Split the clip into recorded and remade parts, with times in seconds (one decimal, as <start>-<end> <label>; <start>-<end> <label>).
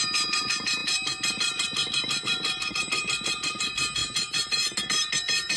0.0-5.6 recorded